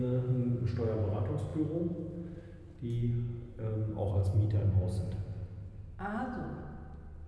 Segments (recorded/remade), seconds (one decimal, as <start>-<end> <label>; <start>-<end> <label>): 0.0-7.3 recorded